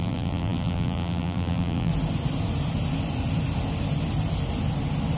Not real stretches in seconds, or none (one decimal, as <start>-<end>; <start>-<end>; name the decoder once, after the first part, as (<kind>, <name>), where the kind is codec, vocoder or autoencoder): 0.0-1.9 (vocoder, BigVGAN v2)